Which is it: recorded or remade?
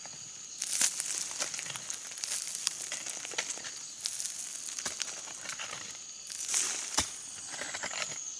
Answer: recorded